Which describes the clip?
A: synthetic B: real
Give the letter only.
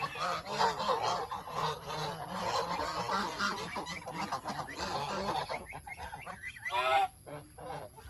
B